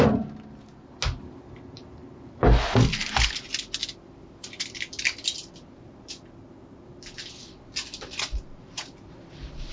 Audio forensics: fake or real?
real